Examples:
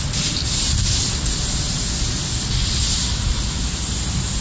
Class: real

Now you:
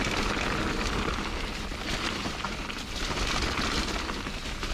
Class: real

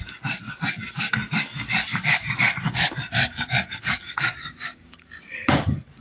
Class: fake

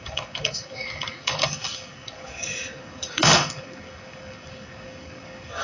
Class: fake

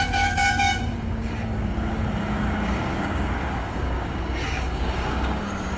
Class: fake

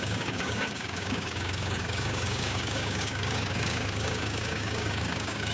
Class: fake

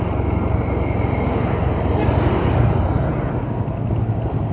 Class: real